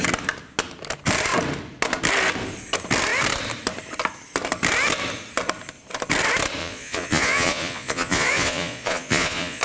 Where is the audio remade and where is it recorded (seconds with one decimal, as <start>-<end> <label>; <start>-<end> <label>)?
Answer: 0.0-6.6 recorded; 6.6-9.6 remade